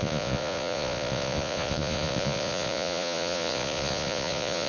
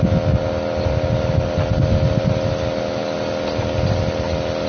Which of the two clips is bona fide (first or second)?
second